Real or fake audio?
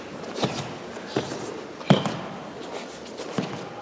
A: real